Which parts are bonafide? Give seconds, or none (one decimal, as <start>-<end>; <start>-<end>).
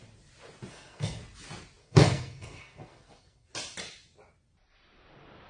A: 0.0-0.7; 1.2-1.8; 3.5-5.5